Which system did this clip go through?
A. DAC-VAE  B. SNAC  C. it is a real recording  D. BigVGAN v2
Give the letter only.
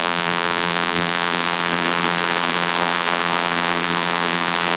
D